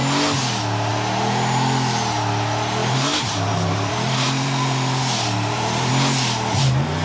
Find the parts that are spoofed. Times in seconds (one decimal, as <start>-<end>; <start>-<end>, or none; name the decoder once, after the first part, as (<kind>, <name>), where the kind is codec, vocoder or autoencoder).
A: 2.8-5.9 (vocoder, BigVGAN v2)